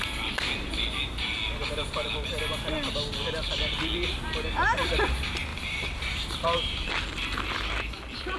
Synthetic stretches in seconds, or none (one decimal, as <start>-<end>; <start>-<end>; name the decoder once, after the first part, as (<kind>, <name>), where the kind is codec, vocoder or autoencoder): 5.5-6.9 (vocoder, BigVGAN v2)